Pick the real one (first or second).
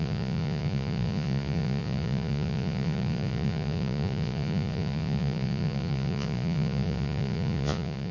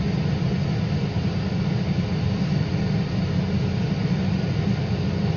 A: second